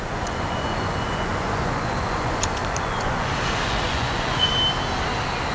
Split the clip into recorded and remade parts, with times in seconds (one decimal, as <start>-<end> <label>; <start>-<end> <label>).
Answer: 0.0-4.5 remade; 4.5-5.5 recorded